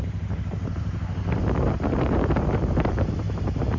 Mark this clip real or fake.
fake